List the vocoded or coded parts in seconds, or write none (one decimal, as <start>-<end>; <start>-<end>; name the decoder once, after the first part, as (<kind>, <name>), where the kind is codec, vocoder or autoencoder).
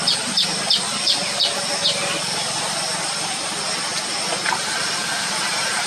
none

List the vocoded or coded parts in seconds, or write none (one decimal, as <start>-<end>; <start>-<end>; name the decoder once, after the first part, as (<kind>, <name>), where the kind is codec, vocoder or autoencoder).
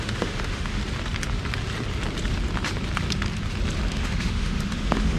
0.0-0.8 (autoencoder, DAC-VAE); 3.9-5.2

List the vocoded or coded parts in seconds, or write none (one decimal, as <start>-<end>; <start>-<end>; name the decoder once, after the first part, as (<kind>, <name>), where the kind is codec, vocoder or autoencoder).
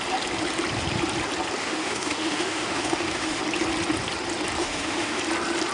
1.6-3.4 (autoencoder, DAC-VAE); 4.6-5.2